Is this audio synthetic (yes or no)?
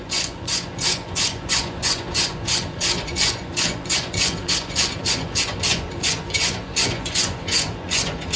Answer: yes